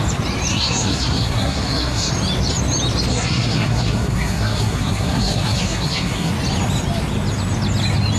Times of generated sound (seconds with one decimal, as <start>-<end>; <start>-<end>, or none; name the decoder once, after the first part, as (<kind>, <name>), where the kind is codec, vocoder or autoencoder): 0.5-2.1 (codec, SNAC); 3.1-6.3